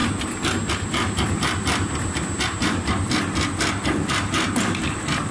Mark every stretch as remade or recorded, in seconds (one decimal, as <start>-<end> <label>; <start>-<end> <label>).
0.0-5.3 recorded